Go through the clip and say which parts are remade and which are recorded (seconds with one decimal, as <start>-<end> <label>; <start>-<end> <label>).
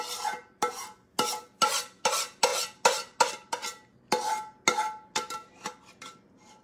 0.0-6.6 recorded